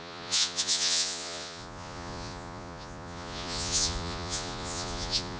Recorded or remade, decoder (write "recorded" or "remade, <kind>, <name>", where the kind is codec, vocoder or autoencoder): remade, vocoder, Vocos